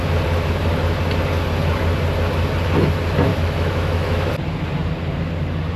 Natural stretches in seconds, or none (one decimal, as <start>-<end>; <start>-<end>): 0.0-3.3; 4.3-5.8